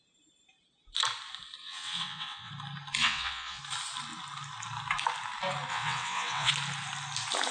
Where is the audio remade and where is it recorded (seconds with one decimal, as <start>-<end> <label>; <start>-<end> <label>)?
0.0-1.6 recorded; 1.6-2.5 remade; 2.5-3.0 recorded; 3.0-3.6 remade; 3.6-5.7 recorded; 5.7-6.5 remade; 6.5-7.5 recorded